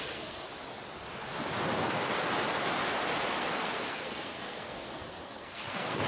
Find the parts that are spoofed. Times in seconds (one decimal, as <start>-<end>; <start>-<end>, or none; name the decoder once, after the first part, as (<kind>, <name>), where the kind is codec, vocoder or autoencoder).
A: 0.0-0.5 (codec, SNAC); 3.3-6.1